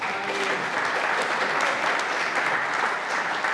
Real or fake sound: real